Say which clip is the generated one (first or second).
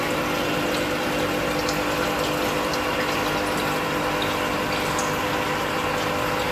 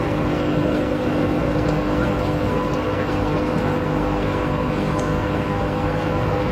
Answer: second